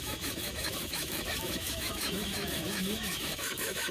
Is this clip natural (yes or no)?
no